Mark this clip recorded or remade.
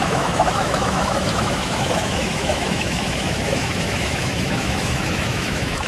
remade